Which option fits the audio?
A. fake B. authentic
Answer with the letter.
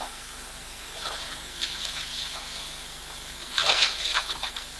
A